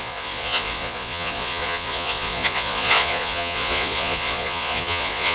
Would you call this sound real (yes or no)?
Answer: no